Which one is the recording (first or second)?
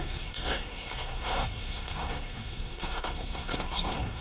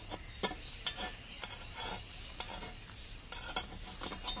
second